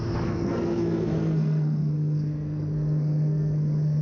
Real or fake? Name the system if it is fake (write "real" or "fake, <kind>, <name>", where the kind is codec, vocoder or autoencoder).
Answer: fake, codec, SNAC